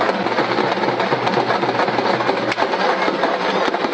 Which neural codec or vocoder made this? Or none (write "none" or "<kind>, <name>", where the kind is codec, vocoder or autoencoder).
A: none